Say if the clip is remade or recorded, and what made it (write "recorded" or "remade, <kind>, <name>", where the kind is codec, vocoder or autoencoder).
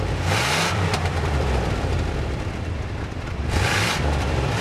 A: remade, vocoder, BigVGAN v2